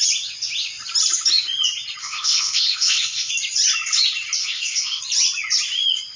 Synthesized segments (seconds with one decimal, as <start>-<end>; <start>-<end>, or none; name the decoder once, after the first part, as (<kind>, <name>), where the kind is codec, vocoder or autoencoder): 2.0-3.3 (codec, ZipCodec); 4.4-5.0